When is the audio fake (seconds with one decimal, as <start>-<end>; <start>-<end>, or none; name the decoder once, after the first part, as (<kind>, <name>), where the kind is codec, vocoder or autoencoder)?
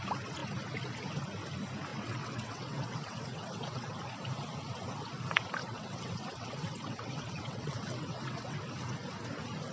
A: 1.9-3.9 (vocoder, WaveNeXt); 5.6-8.7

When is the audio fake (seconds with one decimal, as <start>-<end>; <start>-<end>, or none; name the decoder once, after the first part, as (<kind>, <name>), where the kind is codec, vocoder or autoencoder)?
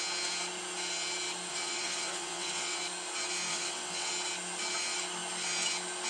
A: 1.5-2.8 (vocoder, WaveNeXt); 3.5-4.1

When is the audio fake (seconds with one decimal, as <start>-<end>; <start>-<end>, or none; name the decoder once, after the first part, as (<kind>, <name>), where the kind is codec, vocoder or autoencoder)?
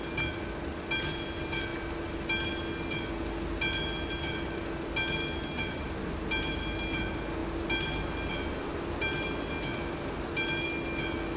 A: none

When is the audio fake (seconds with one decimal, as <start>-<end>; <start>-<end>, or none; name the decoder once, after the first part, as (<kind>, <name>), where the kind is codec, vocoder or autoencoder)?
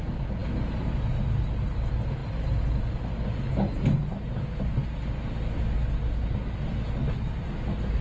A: none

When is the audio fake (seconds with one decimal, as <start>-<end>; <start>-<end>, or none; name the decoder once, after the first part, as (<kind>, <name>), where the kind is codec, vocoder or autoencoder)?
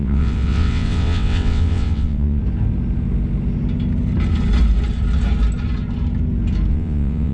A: 0.0-2.4 (vocoder, WaveNeXt); 6.7-7.3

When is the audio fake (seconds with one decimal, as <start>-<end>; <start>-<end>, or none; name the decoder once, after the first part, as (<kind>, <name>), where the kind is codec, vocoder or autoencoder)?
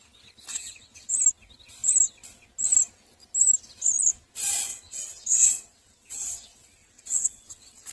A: 0.5-1.1 (vocoder, WaveNeXt); 4.7-7.9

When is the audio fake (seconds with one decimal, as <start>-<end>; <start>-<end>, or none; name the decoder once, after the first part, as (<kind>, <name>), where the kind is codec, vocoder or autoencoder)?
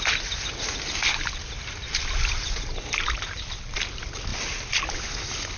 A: none